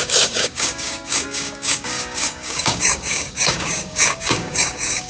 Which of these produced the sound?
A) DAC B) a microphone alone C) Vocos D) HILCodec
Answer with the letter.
A